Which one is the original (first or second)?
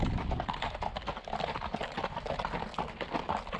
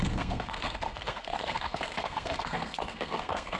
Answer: first